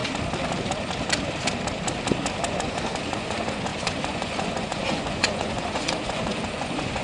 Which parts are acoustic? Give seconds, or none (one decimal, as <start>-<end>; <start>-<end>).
0.0-2.5